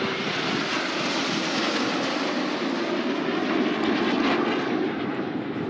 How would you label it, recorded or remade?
recorded